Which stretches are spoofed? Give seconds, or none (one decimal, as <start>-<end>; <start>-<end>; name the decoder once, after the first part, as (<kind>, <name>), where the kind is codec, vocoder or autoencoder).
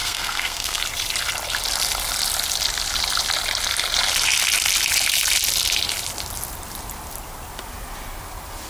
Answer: 0.0-0.8 (codec, SNAC)